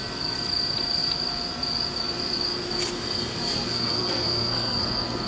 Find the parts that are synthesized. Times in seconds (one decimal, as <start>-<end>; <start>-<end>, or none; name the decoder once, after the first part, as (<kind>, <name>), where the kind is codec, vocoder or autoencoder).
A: 3.3-4.8 (codec, SNAC)